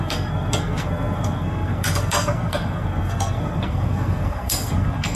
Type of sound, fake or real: fake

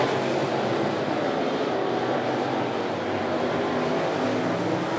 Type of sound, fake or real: real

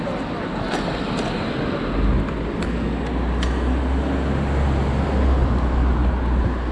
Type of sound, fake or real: real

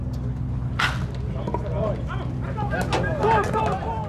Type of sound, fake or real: real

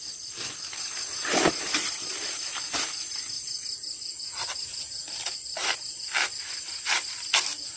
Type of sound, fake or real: real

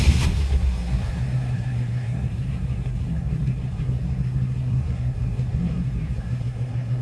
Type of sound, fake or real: fake